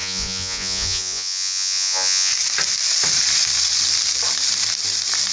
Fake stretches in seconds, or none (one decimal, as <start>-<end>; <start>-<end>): 0.0-2.3